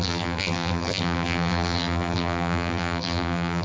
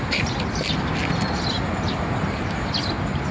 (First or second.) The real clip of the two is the second